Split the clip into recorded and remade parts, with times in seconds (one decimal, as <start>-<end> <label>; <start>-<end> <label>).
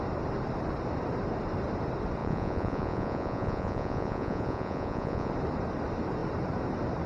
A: 0.0-2.2 recorded; 2.2-5.3 remade; 5.3-7.1 recorded